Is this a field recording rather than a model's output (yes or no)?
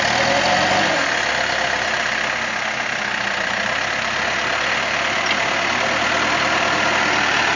yes